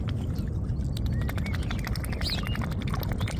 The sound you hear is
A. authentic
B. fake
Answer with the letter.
A